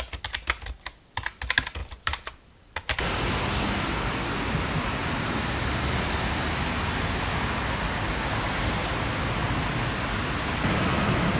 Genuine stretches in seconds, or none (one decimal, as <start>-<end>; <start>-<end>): 0.0-1.8; 3.0-11.4